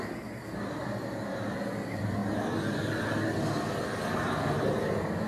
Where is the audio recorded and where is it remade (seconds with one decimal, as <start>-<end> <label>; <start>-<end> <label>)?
0.0-0.8 remade; 0.8-1.3 recorded; 1.3-2.2 remade; 2.2-4.7 recorded; 4.7-5.3 remade